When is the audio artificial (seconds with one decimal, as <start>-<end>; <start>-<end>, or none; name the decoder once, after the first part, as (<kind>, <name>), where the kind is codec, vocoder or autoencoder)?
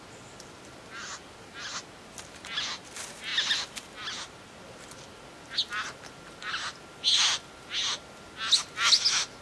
none